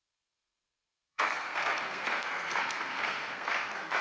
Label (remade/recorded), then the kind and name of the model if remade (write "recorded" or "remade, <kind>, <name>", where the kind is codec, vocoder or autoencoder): remade, codec, SNAC